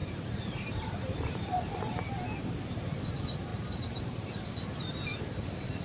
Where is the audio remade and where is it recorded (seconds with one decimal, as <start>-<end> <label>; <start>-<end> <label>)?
0.0-1.8 remade; 1.8-3.5 recorded; 3.5-4.3 remade; 4.3-5.8 recorded